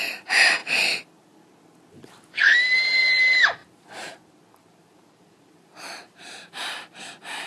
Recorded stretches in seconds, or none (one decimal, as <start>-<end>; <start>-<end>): 0.0-3.6; 7.0-7.5